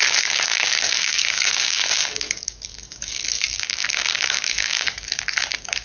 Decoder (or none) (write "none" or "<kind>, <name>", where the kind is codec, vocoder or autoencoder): codec, DAC